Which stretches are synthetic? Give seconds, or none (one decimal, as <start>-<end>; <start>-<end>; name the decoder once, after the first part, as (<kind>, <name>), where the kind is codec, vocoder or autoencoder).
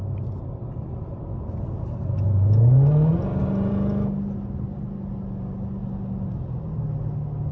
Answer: none